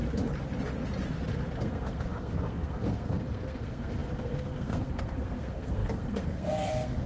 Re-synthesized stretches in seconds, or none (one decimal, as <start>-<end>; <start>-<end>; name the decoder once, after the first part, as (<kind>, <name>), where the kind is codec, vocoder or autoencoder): 1.6-7.1 (codec, SNAC)